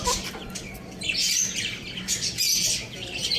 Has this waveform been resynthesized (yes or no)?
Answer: no